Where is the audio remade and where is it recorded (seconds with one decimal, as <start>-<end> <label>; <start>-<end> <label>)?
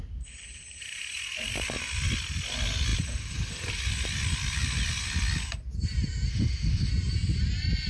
0.0-6.3 recorded; 6.3-6.9 remade; 6.9-7.9 recorded